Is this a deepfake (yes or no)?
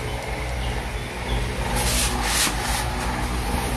no